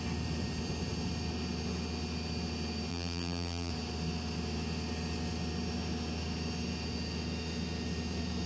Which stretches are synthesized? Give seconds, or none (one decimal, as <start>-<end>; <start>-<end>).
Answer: 2.9-3.7